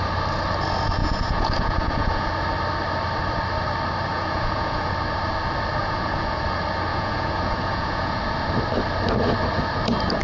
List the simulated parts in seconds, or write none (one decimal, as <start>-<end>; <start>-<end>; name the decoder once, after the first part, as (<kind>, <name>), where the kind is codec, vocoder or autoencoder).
1.0-2.3 (vocoder, Vocos); 4.1-4.9; 5.8-6.4; 6.9-8.2